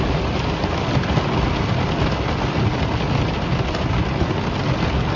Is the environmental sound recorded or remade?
recorded